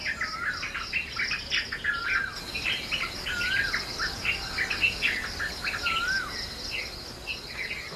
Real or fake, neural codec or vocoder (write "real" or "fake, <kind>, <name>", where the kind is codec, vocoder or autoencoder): real